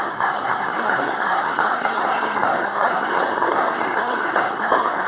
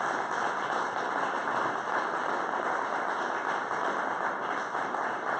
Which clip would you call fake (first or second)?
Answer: first